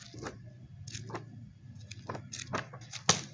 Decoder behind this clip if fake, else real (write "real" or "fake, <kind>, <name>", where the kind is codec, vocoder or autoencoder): real